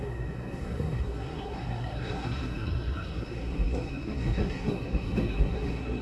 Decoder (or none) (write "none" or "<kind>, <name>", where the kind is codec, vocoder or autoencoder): codec, SNAC